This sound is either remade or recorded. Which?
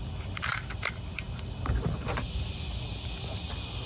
recorded